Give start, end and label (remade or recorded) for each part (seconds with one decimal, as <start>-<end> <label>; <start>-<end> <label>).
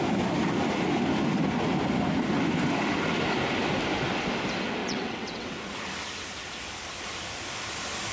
0.0-4.8 recorded; 4.8-5.5 remade; 5.5-8.1 recorded